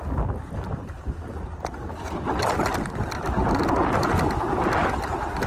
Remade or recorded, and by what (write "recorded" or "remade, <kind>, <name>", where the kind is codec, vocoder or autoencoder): recorded